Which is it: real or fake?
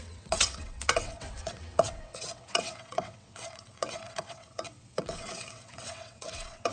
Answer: fake